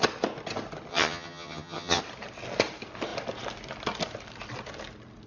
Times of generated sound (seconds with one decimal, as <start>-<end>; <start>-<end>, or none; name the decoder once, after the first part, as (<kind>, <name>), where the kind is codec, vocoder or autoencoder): 0.9-2.0 (vocoder, HiFi-GAN)